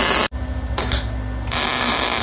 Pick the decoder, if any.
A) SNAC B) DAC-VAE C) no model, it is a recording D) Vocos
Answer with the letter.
C